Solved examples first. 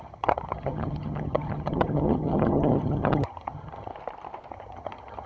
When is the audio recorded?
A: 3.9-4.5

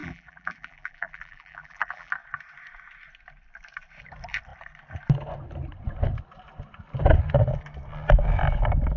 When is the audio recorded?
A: 2.1-9.0

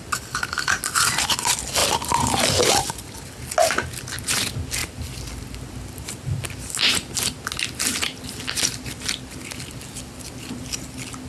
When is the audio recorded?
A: 0.0-11.3

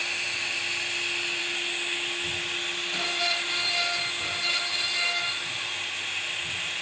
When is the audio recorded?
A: 0.0-6.8

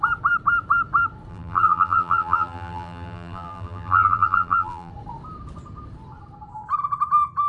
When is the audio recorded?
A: 0.0-1.3; 4.9-7.5

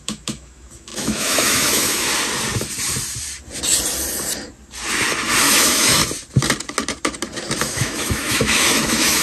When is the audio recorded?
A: 2.1-5.4; 6.0-7.6

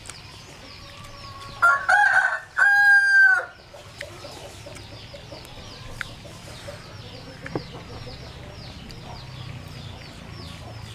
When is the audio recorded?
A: 0.0-10.9

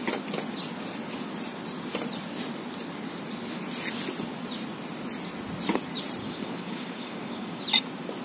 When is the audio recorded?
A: 0.0-6.2; 7.6-8.2